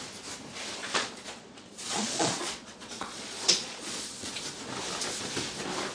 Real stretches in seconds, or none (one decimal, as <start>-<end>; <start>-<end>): 0.0-0.8; 4.3-5.9